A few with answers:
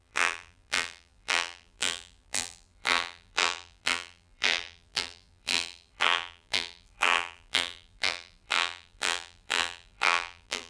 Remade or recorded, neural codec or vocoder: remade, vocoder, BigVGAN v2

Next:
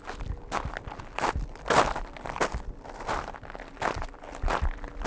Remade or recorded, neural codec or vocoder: recorded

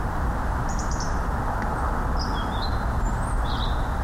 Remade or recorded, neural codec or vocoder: recorded